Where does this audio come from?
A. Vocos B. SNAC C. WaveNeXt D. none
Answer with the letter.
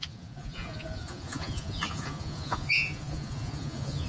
A